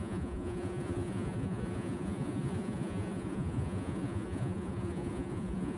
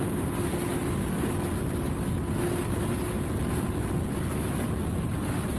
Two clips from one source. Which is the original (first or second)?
second